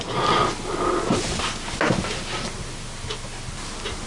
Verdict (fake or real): real